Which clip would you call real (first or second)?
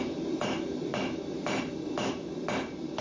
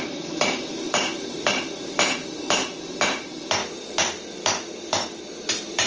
first